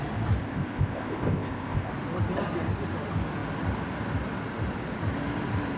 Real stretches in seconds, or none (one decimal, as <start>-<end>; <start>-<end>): 0.0-0.4; 1.9-5.8